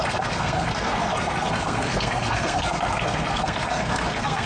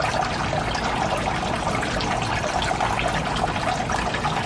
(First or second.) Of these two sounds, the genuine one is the second